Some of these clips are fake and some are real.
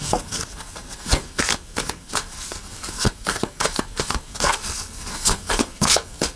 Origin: fake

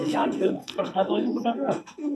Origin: fake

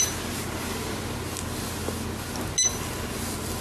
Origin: real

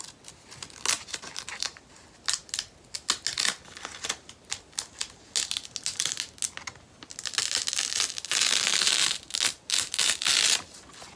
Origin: real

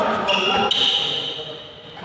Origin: real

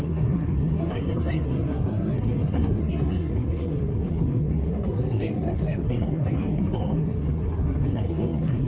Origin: fake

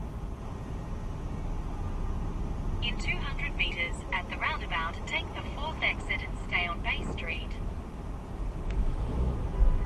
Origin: real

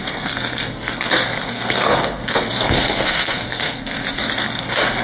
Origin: fake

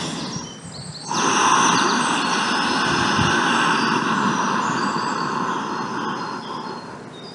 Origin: real